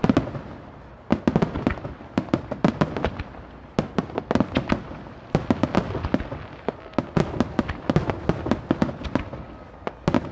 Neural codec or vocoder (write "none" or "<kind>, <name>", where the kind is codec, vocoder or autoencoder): none